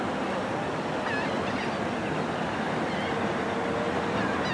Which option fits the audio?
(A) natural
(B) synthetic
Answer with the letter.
A